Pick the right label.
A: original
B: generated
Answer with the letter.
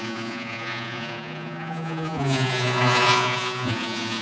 B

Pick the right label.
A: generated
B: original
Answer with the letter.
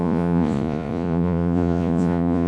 A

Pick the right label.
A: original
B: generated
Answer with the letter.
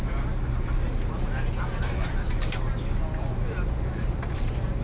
A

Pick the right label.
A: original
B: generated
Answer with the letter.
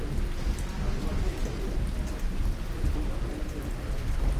A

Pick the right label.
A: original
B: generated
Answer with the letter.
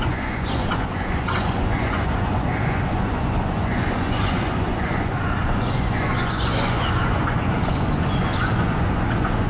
B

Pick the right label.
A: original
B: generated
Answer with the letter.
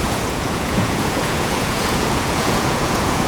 B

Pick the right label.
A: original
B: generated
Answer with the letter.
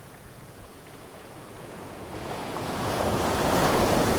B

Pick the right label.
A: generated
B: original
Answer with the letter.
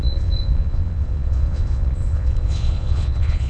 A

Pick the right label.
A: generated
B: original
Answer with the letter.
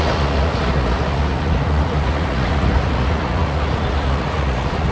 A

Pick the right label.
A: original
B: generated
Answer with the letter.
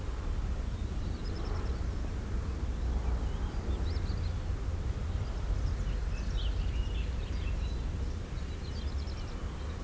A